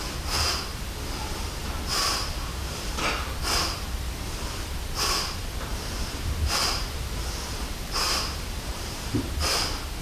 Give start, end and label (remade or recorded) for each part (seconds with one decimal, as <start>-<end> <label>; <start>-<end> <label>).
0.0-1.6 recorded; 1.6-2.9 remade; 2.9-5.7 recorded; 5.7-9.3 remade; 9.3-10.0 recorded